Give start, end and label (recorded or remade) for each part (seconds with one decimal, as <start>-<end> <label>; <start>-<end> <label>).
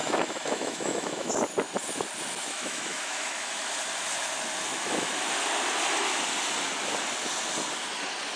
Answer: 0.0-1.3 remade; 1.3-2.4 recorded; 2.4-3.7 remade; 3.7-4.7 recorded; 4.7-5.3 remade; 5.3-8.4 recorded